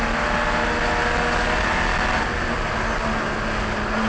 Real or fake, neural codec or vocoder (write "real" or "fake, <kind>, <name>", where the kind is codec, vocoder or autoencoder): real